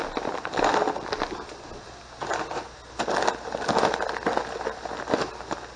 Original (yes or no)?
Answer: yes